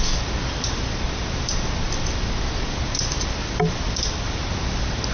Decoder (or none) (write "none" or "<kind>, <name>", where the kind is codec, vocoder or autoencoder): vocoder, BigVGAN v2